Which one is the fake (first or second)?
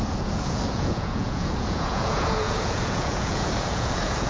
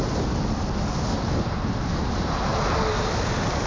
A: first